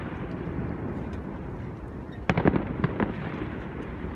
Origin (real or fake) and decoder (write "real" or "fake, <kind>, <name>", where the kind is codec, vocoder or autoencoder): fake, vocoder, BigVGAN v2